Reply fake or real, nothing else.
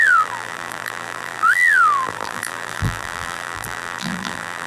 fake